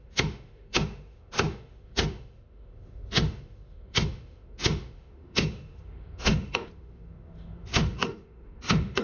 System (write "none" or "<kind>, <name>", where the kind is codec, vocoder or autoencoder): autoencoder, DAC-VAE